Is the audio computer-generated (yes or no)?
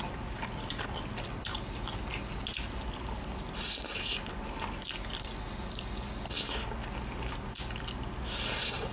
no